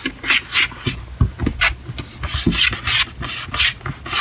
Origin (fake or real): real